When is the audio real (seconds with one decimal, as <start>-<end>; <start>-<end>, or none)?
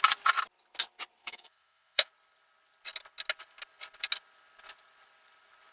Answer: 0.0-1.2; 2.1-5.7